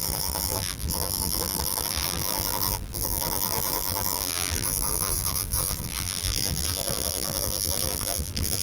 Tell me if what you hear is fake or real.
fake